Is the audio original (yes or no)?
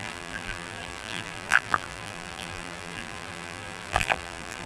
no